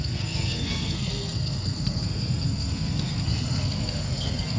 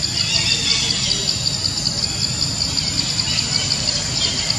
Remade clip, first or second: first